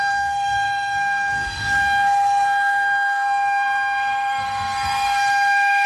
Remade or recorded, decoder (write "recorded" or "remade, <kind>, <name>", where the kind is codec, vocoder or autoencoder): remade, codec, SNAC